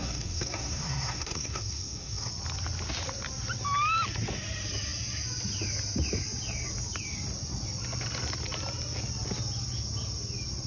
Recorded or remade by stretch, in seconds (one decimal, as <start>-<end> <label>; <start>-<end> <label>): 0.0-2.3 remade; 2.3-10.7 recorded